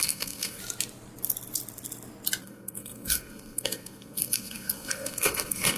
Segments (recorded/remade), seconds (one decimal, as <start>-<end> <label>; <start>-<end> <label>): 0.0-0.6 remade; 0.6-2.4 recorded; 2.4-5.8 remade